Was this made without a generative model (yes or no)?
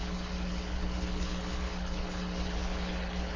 no